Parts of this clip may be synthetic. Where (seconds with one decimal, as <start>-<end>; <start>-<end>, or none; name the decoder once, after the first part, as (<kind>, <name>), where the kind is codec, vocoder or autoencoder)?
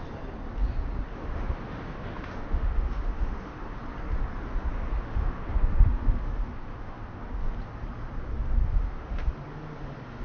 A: 1.1-3.8 (autoencoder, DAC-VAE); 4.9-7.2; 8.6-9.3